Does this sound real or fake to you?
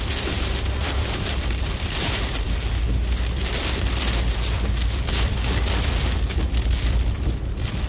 fake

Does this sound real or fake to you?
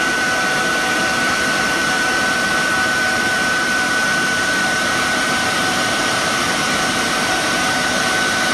fake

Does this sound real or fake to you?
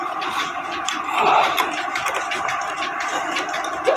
fake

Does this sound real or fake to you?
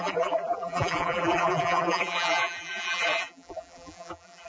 fake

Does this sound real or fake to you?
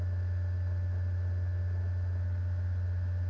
real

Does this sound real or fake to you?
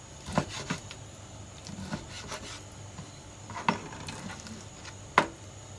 real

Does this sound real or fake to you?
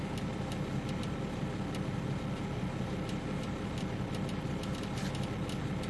real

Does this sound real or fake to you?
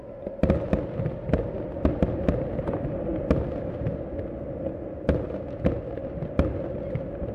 real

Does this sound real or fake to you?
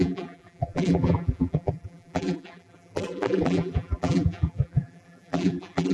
fake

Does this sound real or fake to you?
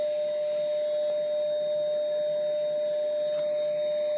real